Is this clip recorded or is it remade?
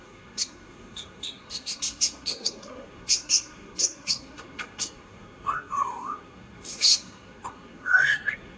remade